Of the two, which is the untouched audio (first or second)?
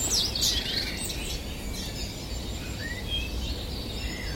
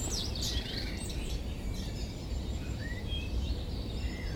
first